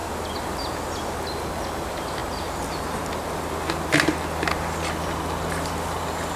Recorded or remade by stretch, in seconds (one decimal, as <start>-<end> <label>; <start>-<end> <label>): 0.0-6.4 recorded